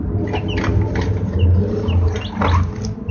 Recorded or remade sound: recorded